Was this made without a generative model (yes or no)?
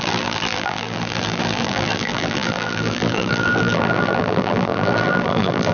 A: no